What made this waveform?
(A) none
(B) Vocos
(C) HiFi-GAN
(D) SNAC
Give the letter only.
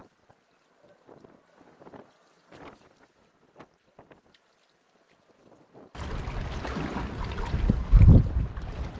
A